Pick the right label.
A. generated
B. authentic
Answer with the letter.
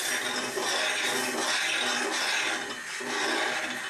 B